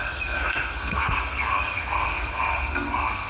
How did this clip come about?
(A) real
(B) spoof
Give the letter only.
B